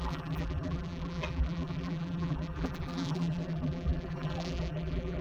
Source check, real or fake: fake